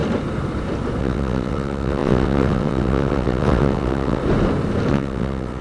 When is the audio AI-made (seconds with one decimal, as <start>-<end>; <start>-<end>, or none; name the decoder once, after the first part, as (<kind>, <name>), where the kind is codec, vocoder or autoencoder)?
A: 1.0-4.2 (vocoder, WaveNeXt); 4.9-5.6